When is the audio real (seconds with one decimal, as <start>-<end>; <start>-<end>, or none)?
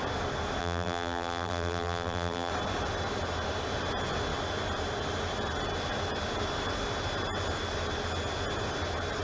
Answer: 0.0-0.6; 2.5-9.2